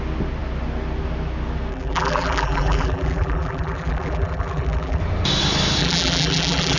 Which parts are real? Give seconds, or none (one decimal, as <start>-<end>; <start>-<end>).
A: 0.0-1.7; 5.0-5.8